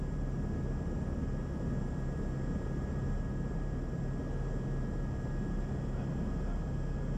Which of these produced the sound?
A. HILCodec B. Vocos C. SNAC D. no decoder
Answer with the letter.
D